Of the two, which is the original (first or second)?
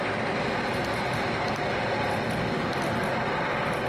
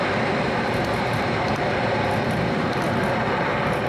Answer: first